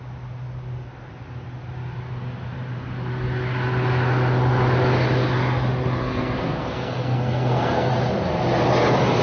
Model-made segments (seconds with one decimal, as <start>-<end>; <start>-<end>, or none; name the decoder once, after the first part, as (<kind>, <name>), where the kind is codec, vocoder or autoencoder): 6.0-7.9 (codec, SNAC)